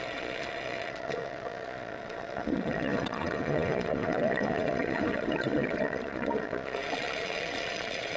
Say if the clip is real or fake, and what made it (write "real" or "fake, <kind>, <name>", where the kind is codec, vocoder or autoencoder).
fake, vocoder, Vocos